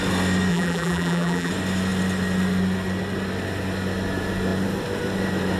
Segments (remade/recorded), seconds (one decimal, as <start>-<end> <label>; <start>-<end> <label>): 0.0-0.5 recorded; 0.5-1.5 remade; 1.5-5.6 recorded